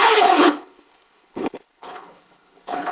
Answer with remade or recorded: remade